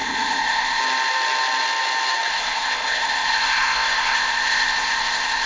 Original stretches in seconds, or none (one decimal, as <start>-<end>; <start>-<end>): 0.8-2.3